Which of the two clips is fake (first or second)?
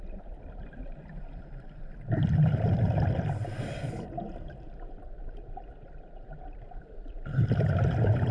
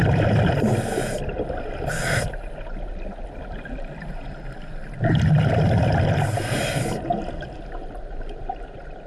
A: first